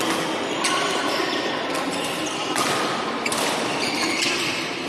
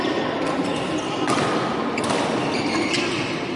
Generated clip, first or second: first